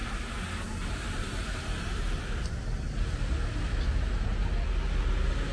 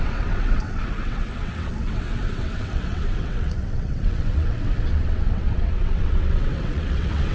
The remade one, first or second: second